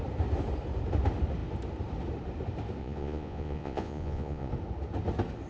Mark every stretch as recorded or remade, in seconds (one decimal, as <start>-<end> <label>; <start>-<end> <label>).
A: 0.0-2.8 recorded; 2.8-4.5 remade; 4.5-5.5 recorded